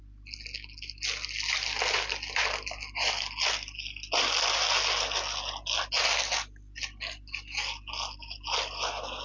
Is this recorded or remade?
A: recorded